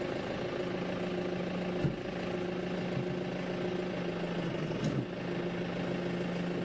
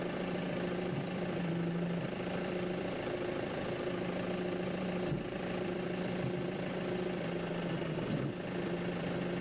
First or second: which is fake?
second